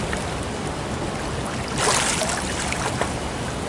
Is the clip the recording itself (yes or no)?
yes